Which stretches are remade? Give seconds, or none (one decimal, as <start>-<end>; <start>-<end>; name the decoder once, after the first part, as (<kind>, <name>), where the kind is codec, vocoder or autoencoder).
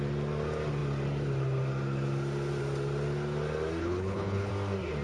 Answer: 3.8-4.5 (codec, HILCodec)